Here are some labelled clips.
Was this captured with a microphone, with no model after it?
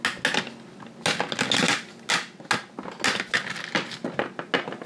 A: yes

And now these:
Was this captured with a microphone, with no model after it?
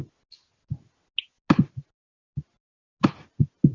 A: yes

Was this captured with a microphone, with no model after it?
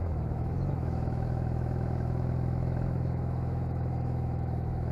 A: no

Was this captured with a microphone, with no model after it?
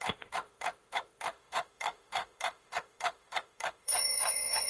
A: no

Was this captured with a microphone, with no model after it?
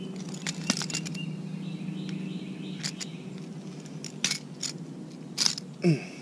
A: yes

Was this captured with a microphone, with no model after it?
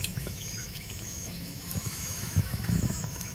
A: no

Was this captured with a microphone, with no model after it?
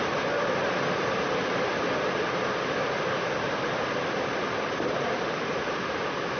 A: yes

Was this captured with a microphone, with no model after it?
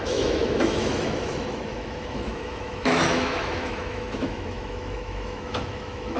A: no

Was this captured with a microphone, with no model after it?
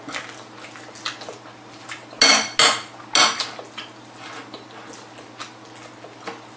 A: yes